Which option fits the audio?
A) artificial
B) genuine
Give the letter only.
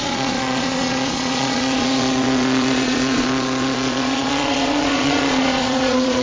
A